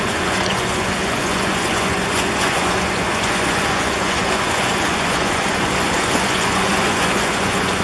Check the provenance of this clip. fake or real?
fake